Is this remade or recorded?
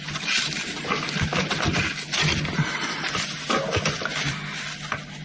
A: recorded